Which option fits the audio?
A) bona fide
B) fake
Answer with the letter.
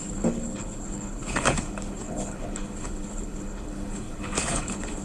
B